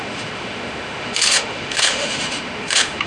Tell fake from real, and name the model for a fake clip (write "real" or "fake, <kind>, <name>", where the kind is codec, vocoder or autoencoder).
fake, autoencoder, DAC-VAE